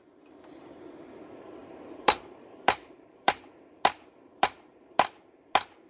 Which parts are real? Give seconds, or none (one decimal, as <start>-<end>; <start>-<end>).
0.0-1.6; 3.4-5.9